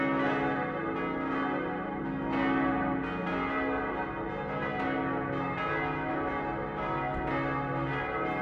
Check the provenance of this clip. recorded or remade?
recorded